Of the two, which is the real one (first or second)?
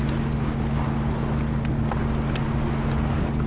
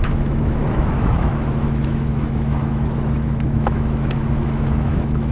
first